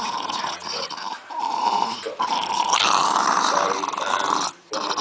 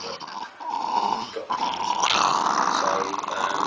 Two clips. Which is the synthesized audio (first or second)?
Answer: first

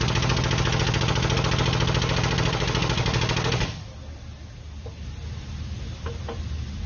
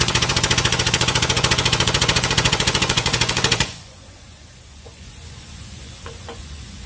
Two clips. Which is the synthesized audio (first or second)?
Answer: second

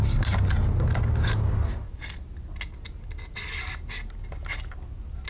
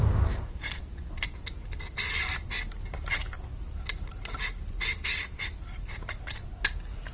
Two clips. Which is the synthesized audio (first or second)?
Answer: second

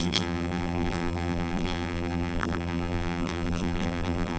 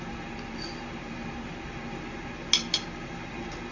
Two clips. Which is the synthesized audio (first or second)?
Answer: first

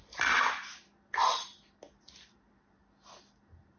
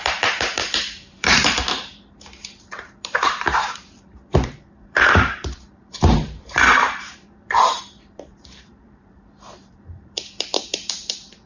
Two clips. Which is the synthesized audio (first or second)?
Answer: second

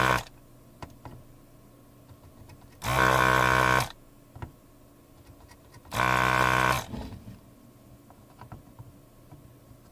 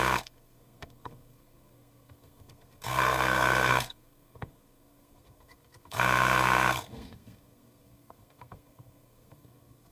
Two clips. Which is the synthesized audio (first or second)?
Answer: second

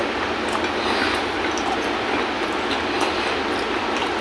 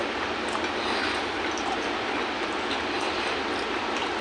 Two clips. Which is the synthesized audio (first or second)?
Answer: second